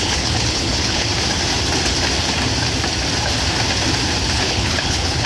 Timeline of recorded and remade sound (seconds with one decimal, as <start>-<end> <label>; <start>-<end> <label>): 0.0-1.1 remade; 1.1-4.3 recorded; 4.3-5.3 remade